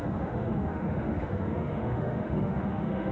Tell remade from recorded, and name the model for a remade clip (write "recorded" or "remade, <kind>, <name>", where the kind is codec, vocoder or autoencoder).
remade, autoencoder, DAC-VAE